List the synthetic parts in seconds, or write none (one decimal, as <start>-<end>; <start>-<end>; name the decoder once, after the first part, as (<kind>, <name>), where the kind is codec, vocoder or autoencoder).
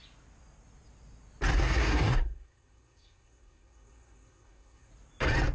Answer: 1.6-4.9 (codec, SNAC)